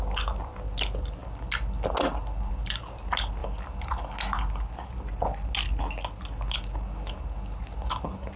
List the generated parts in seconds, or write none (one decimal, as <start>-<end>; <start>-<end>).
none